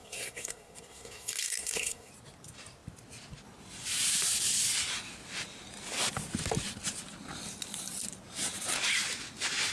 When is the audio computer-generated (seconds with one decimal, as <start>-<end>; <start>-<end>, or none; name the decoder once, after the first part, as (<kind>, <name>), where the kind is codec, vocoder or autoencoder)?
0.0-2.1 (codec, SNAC)